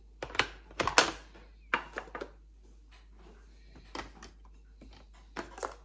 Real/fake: real